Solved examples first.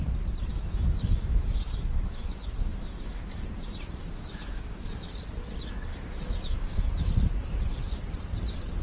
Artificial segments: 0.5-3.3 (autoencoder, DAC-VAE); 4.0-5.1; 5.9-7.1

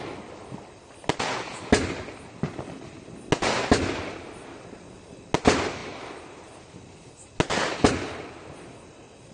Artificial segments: none

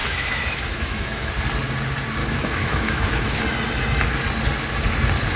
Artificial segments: 0.0-1.3 (autoencoder, DAC-VAE); 2.2-3.4

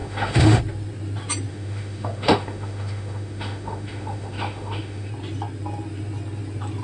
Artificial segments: 0.0-0.6 (autoencoder, DAC-VAE); 1.5-5.1

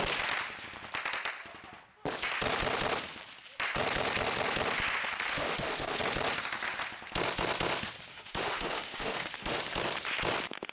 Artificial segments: 5.3-6.0 (autoencoder, DAC-VAE); 8.1-9.6

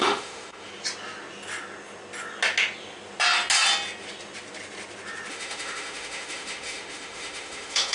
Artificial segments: 0.0-0.7 (autoencoder, DAC-VAE); 5.3-7.9